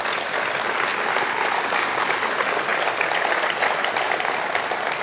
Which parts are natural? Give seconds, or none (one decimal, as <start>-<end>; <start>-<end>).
0.0-5.0